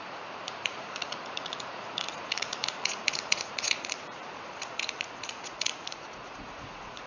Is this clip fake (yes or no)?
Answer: yes